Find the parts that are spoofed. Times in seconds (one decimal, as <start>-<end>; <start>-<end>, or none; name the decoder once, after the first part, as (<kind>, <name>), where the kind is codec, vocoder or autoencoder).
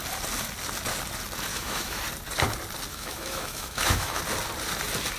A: 1.5-2.0 (autoencoder, DAC-VAE); 2.9-4.2